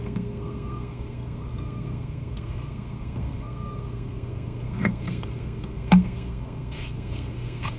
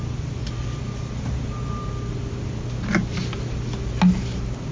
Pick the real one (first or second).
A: second